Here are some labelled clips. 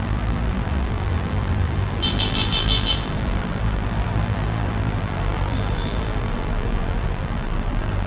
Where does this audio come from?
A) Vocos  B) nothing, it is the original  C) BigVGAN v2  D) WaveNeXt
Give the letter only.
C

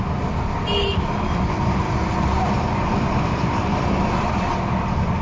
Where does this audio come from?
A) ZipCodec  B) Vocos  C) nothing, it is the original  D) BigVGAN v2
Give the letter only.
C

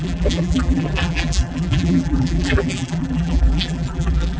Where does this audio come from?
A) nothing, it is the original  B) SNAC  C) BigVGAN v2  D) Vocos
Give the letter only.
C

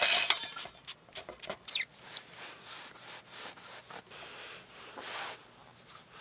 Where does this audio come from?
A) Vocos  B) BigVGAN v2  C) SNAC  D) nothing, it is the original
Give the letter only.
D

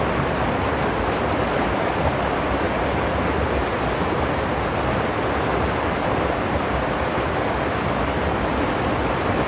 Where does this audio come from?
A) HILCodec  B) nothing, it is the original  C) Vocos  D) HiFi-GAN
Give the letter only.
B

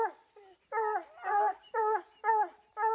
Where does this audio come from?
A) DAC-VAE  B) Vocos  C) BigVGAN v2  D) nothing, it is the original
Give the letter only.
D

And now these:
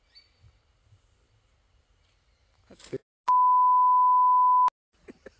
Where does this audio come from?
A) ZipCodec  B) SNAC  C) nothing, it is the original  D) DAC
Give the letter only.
C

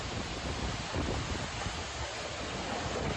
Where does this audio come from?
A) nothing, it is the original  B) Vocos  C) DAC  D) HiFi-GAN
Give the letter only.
A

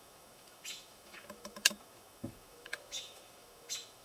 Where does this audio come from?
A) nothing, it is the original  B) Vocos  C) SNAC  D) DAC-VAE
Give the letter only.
D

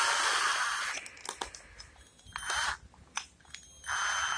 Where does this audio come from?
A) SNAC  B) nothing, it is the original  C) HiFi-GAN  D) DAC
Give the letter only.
B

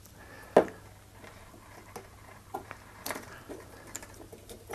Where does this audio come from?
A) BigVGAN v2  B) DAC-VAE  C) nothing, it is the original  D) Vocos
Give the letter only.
C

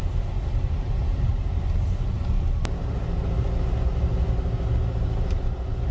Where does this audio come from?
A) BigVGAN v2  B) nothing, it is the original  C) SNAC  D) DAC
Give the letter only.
B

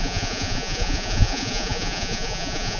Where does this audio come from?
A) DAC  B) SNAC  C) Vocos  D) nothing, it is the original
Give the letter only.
C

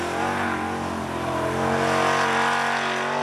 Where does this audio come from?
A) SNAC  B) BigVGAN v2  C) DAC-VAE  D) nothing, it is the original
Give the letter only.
D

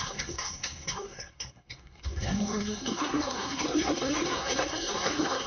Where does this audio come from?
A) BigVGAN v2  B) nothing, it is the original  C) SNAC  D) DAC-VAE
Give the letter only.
C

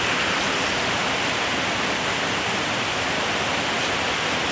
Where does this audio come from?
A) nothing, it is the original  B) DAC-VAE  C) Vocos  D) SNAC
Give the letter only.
A